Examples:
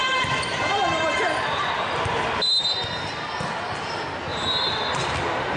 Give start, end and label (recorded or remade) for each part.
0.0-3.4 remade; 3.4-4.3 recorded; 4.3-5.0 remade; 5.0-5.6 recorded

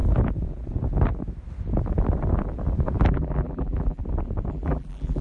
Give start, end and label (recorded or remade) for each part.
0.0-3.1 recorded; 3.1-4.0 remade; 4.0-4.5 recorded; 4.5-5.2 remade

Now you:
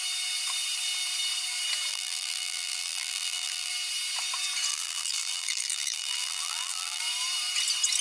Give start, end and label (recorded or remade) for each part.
0.0-1.9 recorded; 1.9-3.7 remade; 3.7-4.7 recorded; 4.7-7.0 remade; 7.0-8.0 recorded

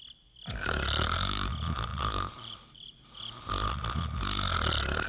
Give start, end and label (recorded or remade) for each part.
0.0-1.9 recorded; 1.9-3.5 remade; 3.5-5.1 recorded

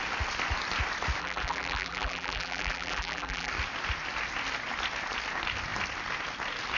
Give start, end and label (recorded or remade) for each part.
0.0-1.2 recorded; 1.2-3.5 remade; 3.5-6.8 recorded

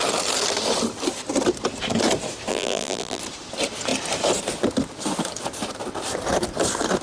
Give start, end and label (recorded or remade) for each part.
0.0-2.5 recorded; 2.5-3.2 remade; 3.2-7.0 recorded

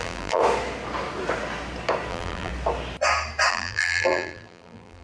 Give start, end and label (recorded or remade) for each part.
0.0-0.4 remade; 0.4-2.1 recorded; 2.1-2.5 remade; 2.5-3.5 recorded; 3.5-5.0 remade

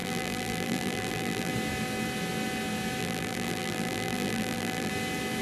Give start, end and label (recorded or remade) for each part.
0.0-1.5 remade; 1.5-3.0 recorded; 3.0-4.9 remade; 4.9-5.4 recorded